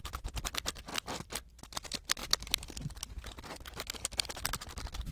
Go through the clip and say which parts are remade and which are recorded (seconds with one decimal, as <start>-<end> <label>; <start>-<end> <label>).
0.0-0.9 remade; 0.9-1.6 recorded; 1.6-5.1 remade